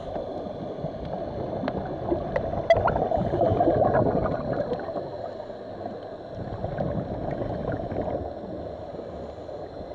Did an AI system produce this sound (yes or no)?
no